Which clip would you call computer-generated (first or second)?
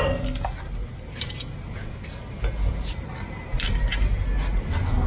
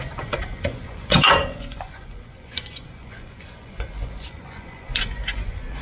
second